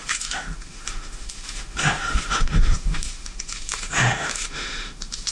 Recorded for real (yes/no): no